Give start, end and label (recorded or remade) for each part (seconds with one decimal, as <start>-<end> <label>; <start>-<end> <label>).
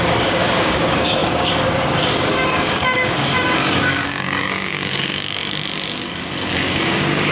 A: 0.0-5.4 remade; 5.4-6.5 recorded; 6.5-7.3 remade